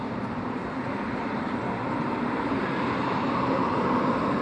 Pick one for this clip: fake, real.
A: fake